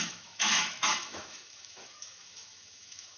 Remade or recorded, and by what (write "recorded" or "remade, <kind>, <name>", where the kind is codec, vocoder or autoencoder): remade, autoencoder, DAC-VAE